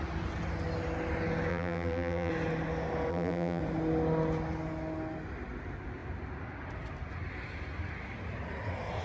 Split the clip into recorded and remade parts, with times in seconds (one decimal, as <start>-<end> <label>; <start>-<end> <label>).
0.0-1.5 recorded; 1.5-2.3 remade; 2.3-3.1 recorded; 3.1-3.6 remade; 3.6-9.0 recorded